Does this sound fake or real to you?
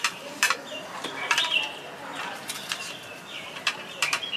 fake